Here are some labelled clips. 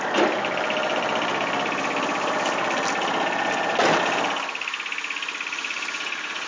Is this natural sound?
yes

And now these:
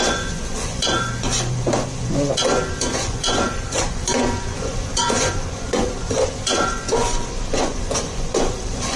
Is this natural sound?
no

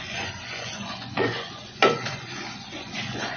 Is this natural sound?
no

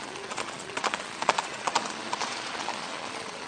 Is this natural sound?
no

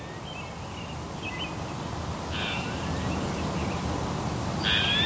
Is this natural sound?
yes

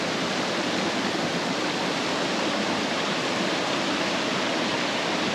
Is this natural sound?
yes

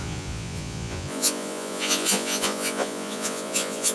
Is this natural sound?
no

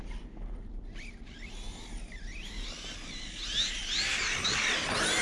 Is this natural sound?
yes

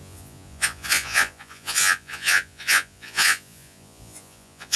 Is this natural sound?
no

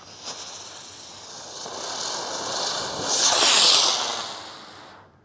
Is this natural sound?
yes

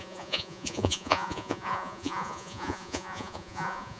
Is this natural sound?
no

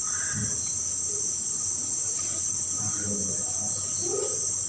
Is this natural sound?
yes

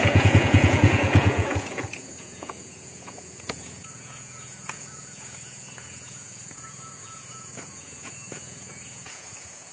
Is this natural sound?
no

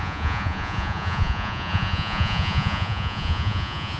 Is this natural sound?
no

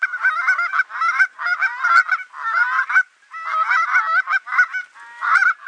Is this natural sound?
yes